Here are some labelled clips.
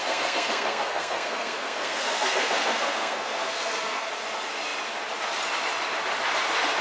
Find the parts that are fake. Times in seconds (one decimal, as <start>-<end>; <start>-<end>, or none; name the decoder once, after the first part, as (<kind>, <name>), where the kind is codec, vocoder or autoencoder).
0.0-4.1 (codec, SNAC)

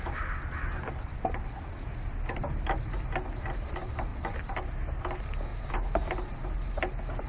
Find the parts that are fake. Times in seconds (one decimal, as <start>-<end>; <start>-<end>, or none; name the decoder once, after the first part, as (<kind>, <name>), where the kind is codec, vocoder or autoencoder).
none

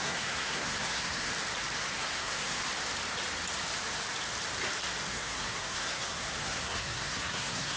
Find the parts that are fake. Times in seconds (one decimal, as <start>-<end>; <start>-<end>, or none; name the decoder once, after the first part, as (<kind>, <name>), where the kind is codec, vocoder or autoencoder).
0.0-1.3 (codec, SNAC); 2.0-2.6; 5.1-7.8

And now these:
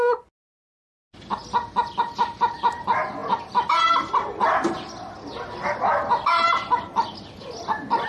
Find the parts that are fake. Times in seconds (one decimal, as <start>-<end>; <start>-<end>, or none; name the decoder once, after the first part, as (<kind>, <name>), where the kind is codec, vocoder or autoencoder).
none

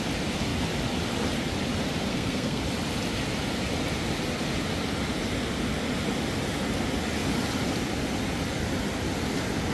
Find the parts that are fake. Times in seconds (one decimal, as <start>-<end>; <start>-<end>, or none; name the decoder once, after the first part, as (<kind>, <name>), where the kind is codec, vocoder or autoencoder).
2.1-2.6 (codec, SNAC)

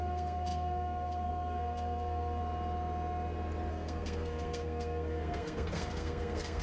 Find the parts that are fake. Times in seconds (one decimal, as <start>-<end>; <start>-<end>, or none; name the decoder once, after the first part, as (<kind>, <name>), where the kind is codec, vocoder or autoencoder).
0.0-2.4 (codec, SNAC); 3.7-6.6

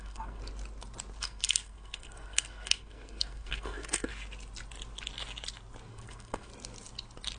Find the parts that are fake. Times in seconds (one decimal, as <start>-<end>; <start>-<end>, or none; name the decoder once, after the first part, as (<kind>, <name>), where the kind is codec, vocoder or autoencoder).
0.0-0.4 (codec, SNAC); 1.2-4.1; 5.9-6.5